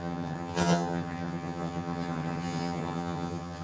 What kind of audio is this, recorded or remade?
remade